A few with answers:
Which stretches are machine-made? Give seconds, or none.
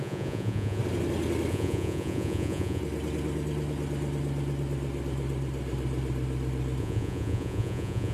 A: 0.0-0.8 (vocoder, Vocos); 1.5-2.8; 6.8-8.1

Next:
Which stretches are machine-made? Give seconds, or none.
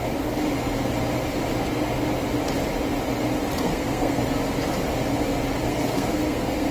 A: 3.6-4.2 (codec, SNAC); 5.7-6.7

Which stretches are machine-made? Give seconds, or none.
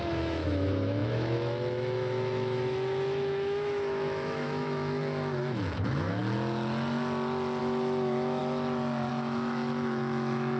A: 0.0-6.2 (autoencoder, DAC-VAE); 7.6-8.4; 9.1-10.6